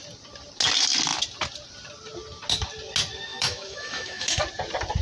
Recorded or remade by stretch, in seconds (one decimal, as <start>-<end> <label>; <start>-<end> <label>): 0.0-3.3 recorded; 3.3-4.4 remade; 4.4-5.0 recorded